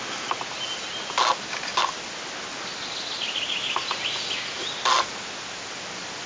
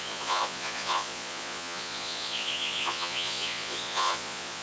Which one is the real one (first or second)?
first